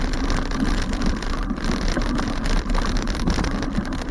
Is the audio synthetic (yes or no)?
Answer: yes